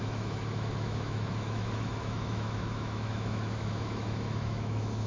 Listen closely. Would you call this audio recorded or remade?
remade